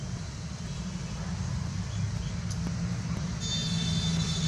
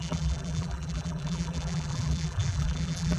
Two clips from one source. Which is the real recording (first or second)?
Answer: first